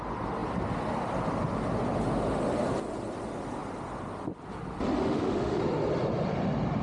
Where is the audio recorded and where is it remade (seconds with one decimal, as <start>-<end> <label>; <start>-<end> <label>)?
0.0-5.0 recorded; 5.0-5.6 remade; 5.6-6.8 recorded